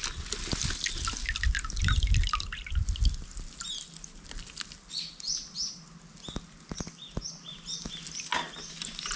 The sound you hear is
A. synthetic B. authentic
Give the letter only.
B